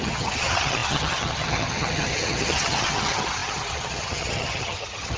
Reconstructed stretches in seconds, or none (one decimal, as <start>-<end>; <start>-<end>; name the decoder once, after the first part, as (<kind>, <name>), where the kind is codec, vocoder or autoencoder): 0.0-5.2 (vocoder, HiFi-GAN)